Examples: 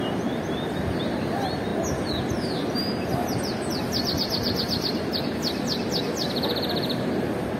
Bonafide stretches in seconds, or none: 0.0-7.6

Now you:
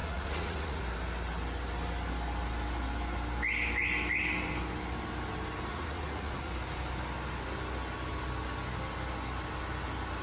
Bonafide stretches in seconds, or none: 0.8-5.7; 6.5-10.2

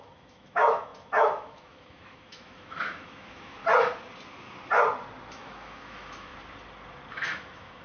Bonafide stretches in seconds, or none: 3.6-5.3; 6.3-7.1